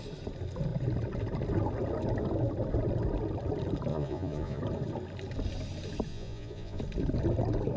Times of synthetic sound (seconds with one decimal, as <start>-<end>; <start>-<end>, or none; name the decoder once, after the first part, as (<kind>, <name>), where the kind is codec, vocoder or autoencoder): 3.9-4.6 (vocoder, Vocos); 6.1-6.8